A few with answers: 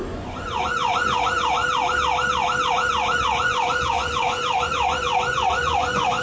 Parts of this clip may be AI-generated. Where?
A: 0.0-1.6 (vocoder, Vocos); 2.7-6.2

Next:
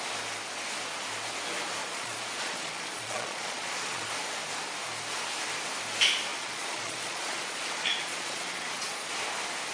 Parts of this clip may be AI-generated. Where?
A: 1.8-4.1 (vocoder, Vocos); 6.3-9.1